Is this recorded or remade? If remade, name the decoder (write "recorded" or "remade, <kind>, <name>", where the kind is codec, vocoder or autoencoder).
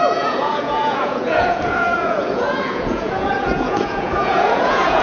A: remade, vocoder, Vocos